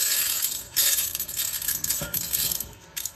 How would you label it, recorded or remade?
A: remade